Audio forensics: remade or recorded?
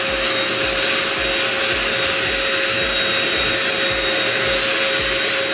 recorded